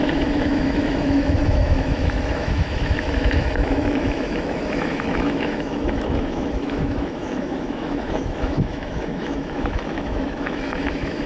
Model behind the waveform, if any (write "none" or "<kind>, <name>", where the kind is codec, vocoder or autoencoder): autoencoder, DAC-VAE